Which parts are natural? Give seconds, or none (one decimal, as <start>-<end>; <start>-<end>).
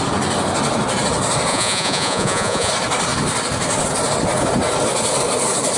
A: 0.0-1.5; 2.7-5.8